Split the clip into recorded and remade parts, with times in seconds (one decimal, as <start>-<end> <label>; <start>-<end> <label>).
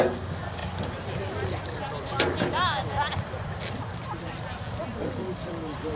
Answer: 0.0-4.8 recorded; 4.8-6.0 remade